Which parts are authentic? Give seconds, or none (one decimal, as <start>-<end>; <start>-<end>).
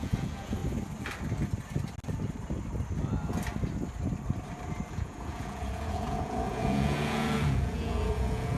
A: 0.6-4.9